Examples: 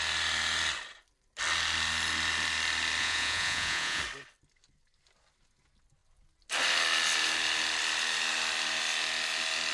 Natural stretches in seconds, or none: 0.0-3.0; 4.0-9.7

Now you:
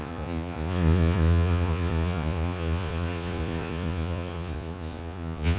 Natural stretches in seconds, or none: none